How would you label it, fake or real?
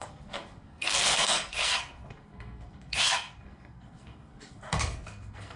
fake